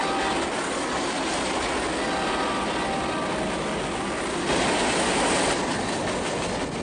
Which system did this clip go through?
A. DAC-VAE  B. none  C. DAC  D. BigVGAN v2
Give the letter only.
B